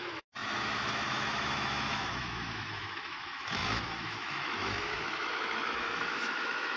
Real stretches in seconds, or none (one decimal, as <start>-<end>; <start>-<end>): none